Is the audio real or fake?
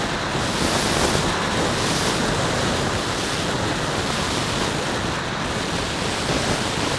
real